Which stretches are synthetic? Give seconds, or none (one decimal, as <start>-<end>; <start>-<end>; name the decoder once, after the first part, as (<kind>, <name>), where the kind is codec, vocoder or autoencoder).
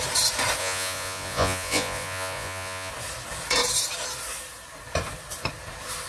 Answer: 0.6-2.9 (vocoder, Vocos)